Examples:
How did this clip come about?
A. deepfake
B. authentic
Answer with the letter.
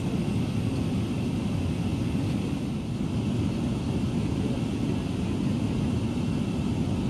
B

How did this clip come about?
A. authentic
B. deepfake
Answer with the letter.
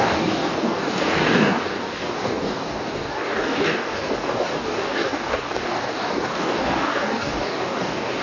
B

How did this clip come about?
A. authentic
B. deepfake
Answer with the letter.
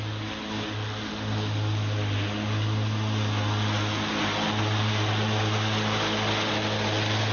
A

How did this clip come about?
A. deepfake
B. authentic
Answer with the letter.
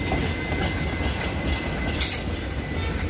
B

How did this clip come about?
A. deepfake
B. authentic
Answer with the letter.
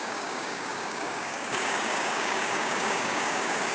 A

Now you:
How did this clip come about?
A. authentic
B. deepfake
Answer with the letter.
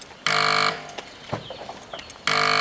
A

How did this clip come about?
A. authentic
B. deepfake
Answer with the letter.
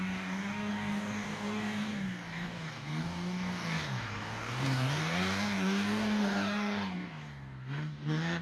B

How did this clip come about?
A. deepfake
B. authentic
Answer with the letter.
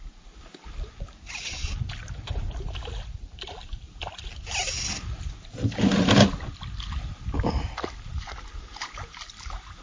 B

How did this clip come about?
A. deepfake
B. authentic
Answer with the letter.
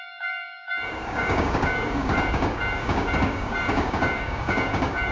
A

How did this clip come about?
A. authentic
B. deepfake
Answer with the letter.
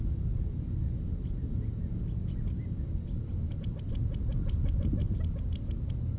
A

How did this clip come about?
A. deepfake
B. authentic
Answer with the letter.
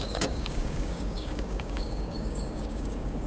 A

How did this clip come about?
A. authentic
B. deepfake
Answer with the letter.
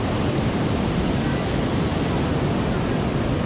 A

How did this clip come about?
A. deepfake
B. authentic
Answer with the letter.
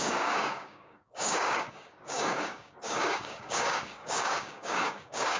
A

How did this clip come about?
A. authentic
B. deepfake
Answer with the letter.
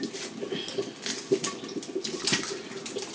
A